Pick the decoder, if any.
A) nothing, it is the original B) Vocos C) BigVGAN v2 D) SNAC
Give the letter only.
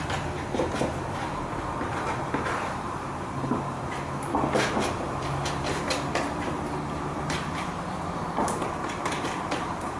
C